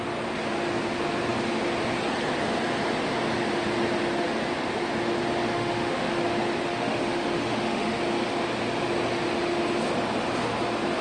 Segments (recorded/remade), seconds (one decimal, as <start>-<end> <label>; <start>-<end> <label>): 0.0-5.5 recorded; 5.5-6.2 remade; 6.2-6.7 recorded; 6.7-8.0 remade; 8.0-11.0 recorded